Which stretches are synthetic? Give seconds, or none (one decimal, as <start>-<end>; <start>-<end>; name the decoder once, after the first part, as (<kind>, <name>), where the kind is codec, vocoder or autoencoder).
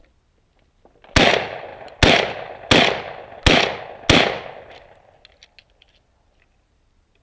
none